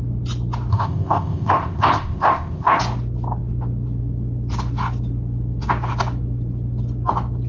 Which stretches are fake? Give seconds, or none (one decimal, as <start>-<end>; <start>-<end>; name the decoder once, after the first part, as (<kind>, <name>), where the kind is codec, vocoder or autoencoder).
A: 0.7-2.8 (codec, ZipCodec)